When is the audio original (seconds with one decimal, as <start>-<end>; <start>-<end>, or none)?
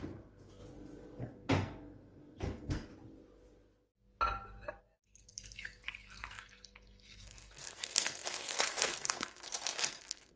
0.6-1.2; 2.9-4.8